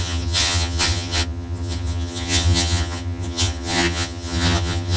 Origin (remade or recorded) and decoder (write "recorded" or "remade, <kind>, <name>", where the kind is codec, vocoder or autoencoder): remade, vocoder, HiFi-GAN